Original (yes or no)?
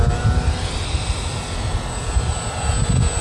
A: yes